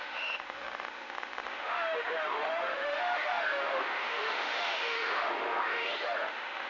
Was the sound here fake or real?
fake